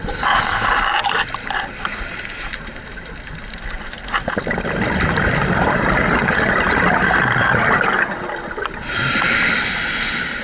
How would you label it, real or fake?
real